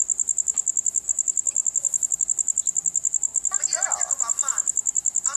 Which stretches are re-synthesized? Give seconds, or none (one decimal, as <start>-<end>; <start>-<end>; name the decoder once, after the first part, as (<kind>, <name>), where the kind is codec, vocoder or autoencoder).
none